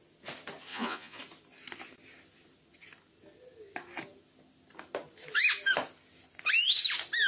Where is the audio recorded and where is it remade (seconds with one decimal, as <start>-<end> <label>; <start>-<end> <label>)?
0.0-0.7 recorded; 0.7-1.2 remade; 1.2-7.3 recorded